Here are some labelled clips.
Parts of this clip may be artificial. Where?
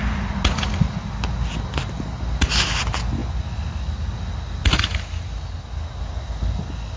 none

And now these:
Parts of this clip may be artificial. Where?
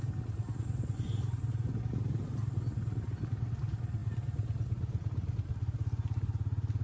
none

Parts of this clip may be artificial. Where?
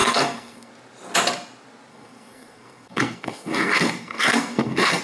0.0-0.7 (codec, SNAC); 1.9-5.0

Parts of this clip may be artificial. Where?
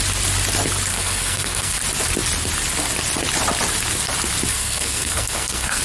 0.9-1.8 (codec, SNAC); 4.5-5.8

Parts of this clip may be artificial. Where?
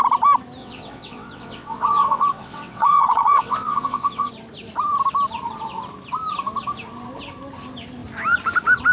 0.6-4.3 (vocoder, WaveNeXt)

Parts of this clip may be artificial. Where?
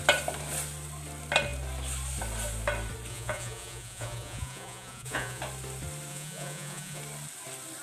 3.1-5.4 (vocoder, Vocos); 6.1-7.0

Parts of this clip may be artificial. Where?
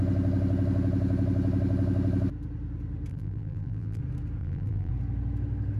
3.1-4.0 (vocoder, BigVGAN v2); 4.4-4.9